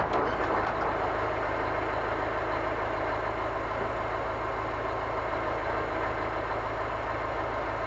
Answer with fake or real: real